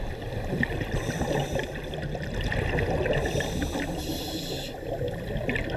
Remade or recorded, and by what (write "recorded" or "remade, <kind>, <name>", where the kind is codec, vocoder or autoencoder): recorded